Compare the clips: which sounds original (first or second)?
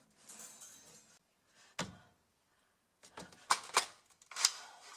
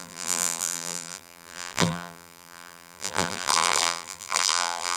first